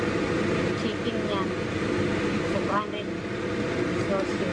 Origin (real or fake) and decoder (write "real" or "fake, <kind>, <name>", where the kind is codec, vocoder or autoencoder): real